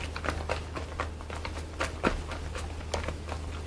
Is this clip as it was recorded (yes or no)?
yes